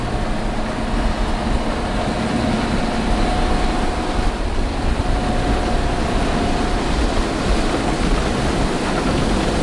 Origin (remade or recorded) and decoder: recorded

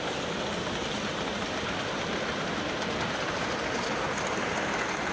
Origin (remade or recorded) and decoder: recorded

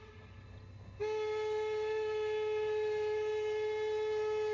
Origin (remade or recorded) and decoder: recorded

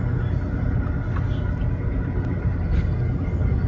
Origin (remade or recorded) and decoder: recorded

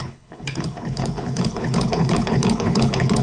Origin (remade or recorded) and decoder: remade, codec, HILCodec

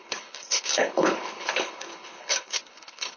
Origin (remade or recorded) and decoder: remade, codec, HILCodec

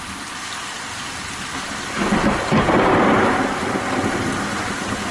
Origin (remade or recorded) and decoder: recorded